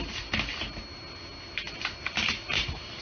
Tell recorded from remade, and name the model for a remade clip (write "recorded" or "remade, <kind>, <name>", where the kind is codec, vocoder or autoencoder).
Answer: recorded